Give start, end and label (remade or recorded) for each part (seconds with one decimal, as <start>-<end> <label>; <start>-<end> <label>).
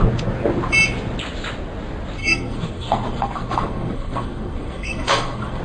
0.0-2.2 recorded; 2.2-5.6 remade